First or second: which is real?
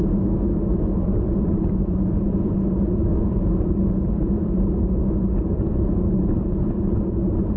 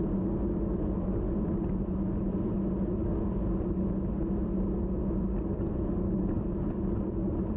second